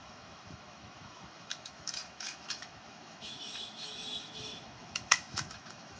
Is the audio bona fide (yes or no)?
no